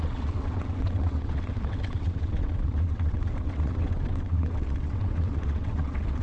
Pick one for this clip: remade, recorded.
remade